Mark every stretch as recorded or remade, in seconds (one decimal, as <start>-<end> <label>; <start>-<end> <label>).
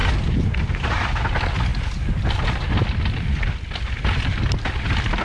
0.0-1.7 recorded; 1.7-4.8 remade; 4.8-5.2 recorded